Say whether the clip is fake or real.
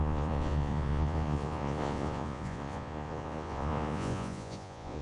fake